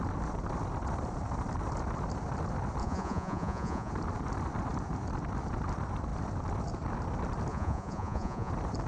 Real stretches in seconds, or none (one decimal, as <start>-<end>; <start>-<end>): 0.0-2.8; 3.9-7.5; 8.5-8.9